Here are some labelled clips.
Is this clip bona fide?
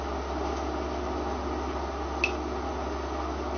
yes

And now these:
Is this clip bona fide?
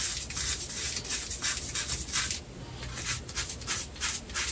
yes